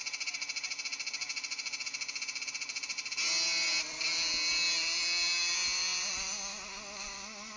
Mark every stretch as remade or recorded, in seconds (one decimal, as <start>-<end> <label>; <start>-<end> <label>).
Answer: 0.0-7.6 recorded